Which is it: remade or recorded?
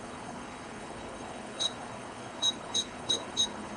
remade